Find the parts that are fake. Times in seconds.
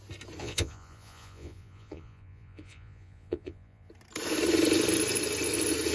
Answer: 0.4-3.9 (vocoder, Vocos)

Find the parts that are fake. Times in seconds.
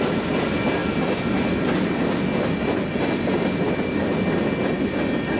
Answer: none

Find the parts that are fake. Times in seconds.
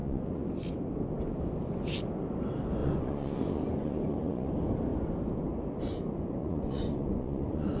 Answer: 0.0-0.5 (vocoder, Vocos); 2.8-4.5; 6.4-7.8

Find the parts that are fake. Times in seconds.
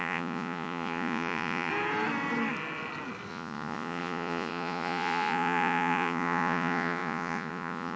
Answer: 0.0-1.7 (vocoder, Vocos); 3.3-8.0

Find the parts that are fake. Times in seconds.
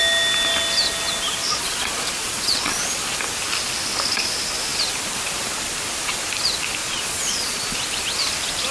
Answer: 1.4-3.0 (vocoder, Vocos); 6.8-7.6